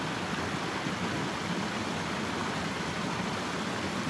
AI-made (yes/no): no